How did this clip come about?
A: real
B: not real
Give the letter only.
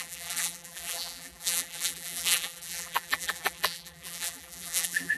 B